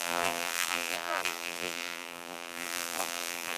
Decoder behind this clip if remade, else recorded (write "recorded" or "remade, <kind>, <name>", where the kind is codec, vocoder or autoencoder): remade, vocoder, BigVGAN v2